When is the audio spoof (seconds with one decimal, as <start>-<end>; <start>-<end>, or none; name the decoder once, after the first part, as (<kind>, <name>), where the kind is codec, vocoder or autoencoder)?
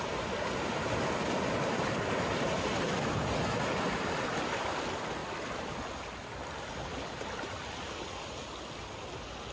none